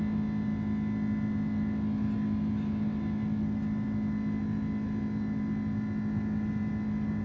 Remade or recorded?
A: recorded